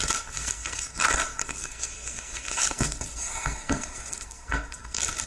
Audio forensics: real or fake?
fake